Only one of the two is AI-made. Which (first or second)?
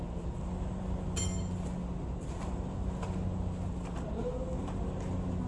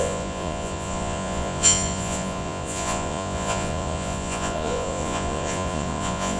second